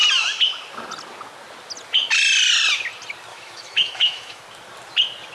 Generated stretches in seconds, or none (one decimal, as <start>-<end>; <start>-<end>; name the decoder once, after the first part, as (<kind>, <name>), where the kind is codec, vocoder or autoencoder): 3.3-4.4 (autoencoder, DAC-VAE)